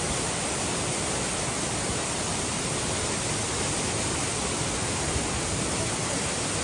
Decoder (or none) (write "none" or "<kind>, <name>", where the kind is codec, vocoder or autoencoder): none